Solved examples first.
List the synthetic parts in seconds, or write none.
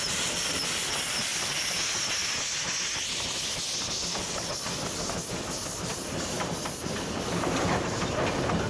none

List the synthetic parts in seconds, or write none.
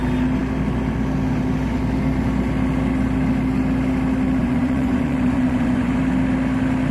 4.4-6.0 (vocoder, Vocos)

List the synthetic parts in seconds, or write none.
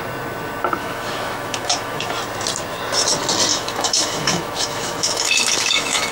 0.8-2.1 (autoencoder, DAC-VAE); 3.5-6.1